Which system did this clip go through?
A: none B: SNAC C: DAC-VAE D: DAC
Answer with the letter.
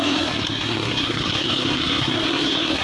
B